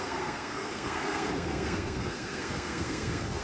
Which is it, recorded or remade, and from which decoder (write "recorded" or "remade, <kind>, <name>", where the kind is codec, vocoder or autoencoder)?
remade, codec, SNAC